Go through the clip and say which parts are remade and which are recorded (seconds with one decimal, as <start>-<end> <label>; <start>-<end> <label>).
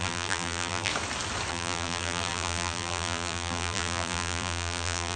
0.0-0.9 remade; 0.9-1.5 recorded; 1.5-5.2 remade